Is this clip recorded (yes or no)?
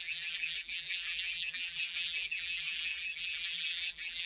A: no